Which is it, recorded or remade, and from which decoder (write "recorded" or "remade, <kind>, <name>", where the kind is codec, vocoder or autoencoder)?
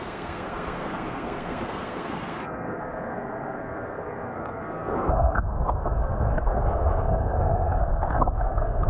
remade, codec, SNAC